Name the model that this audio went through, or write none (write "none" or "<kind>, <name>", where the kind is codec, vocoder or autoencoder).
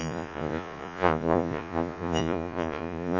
vocoder, Vocos